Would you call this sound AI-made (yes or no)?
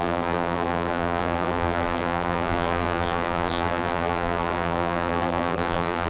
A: yes